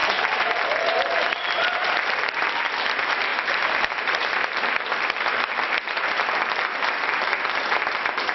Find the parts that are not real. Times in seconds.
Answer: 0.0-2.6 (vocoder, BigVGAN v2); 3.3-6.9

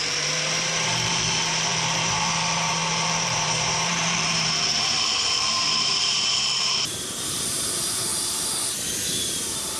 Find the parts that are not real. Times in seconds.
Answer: 0.0-8.1 (vocoder, BigVGAN v2); 9.3-9.8